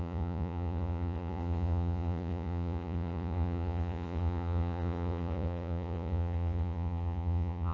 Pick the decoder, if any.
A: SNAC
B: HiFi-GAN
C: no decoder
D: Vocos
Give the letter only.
D